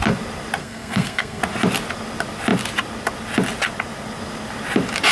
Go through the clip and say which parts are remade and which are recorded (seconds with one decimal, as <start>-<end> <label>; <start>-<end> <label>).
0.0-0.6 recorded; 0.6-1.4 remade; 1.4-5.1 recorded